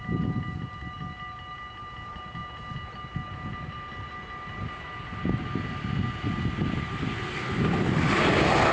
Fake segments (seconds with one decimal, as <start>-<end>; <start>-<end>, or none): none